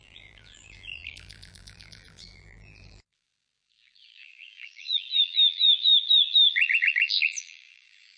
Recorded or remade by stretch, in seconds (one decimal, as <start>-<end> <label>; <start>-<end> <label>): 0.0-8.2 remade